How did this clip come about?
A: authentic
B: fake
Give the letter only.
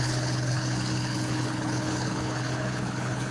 B